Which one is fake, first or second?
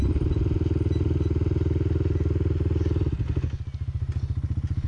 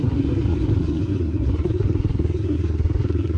second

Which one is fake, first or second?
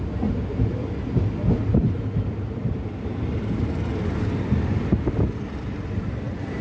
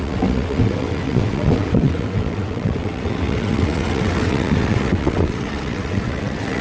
second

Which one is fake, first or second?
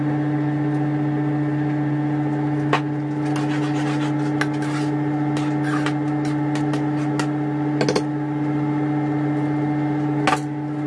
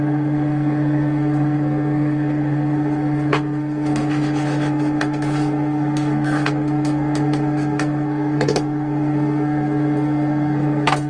second